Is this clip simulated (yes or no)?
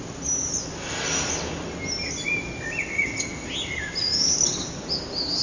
no